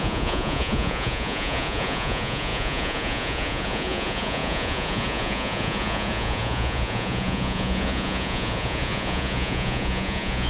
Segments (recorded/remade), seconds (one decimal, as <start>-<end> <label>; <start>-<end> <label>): 0.0-10.5 remade

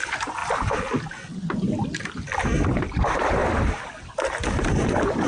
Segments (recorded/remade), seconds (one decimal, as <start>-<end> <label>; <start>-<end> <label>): 0.0-0.4 remade; 0.4-2.6 recorded; 2.6-3.4 remade; 3.4-4.5 recorded; 4.5-5.3 remade

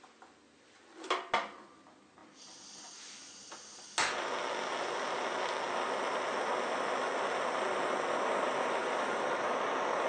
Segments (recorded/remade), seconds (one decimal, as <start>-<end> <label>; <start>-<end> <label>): 0.0-8.8 recorded; 8.8-9.5 remade; 9.5-10.1 recorded

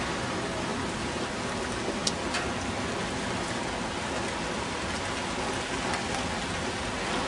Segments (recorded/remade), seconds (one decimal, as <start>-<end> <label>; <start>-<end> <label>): 0.0-0.7 recorded; 0.7-1.3 remade; 1.3-7.3 recorded

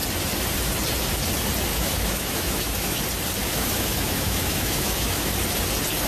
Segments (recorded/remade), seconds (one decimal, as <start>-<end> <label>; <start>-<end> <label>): 0.0-1.7 recorded; 1.7-3.0 remade; 3.0-3.4 recorded; 3.4-5.3 remade; 5.3-6.1 recorded

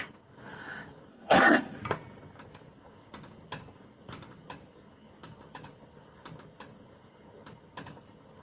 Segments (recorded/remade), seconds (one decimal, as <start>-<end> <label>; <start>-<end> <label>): 0.0-1.1 recorded; 1.1-1.8 remade; 1.8-8.4 recorded

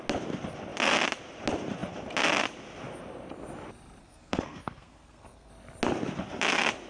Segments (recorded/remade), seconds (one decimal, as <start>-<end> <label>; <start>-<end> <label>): 0.0-4.0 recorded; 4.0-5.5 remade; 5.5-6.9 recorded